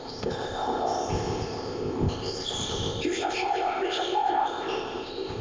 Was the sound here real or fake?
fake